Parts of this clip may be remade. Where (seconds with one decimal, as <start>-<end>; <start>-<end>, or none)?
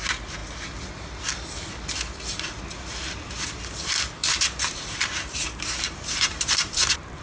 4.2-7.2